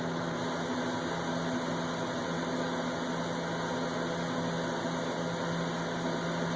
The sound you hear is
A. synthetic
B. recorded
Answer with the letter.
B